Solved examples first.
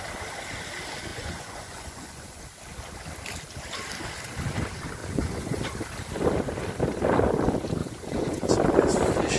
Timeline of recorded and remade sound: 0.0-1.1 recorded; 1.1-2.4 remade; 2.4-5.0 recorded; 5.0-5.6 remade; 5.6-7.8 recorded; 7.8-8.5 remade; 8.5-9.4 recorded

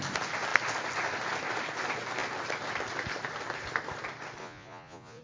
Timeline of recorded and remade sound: 0.0-4.4 recorded; 4.4-5.2 remade